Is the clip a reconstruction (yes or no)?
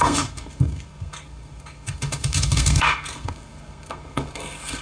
yes